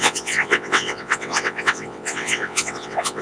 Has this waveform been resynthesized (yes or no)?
yes